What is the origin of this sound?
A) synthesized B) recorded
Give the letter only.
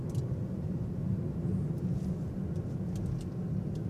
B